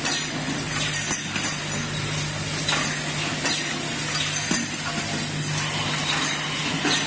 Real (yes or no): yes